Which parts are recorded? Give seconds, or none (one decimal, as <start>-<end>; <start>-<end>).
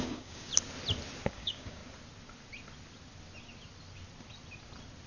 0.5-1.3; 1.8-5.1